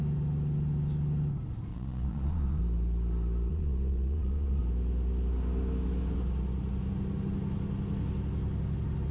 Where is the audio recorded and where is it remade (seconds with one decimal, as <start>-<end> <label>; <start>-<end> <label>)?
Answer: 0.0-1.7 recorded; 1.7-2.6 remade; 2.6-3.5 recorded; 3.5-4.6 remade; 4.6-9.1 recorded